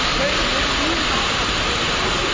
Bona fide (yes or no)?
yes